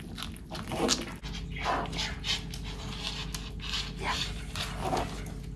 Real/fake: real